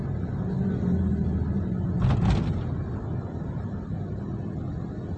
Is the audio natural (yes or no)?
yes